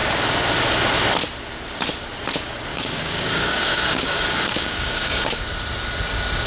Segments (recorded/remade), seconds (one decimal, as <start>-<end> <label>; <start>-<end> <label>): 0.0-2.7 recorded; 2.7-5.4 remade; 5.4-6.5 recorded